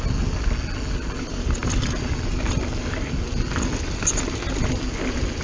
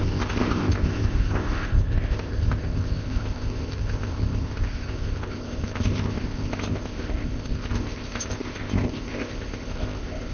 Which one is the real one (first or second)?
first